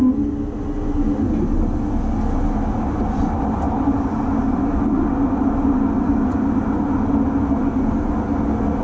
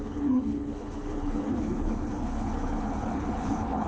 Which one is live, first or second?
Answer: first